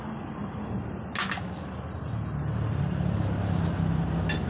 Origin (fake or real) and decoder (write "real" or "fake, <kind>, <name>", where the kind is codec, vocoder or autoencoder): real